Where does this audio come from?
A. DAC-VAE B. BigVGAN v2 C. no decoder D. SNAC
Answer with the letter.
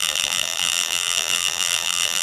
B